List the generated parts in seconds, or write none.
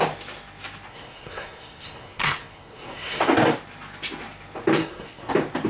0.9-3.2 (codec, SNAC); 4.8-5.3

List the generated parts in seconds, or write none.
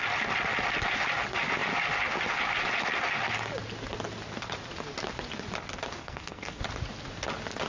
6.0-6.6 (codec, SNAC)